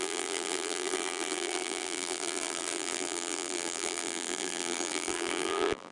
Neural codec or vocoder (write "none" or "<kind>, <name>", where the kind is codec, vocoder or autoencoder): vocoder, BigVGAN v2